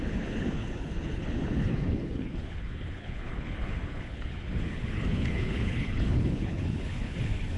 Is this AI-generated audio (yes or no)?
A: yes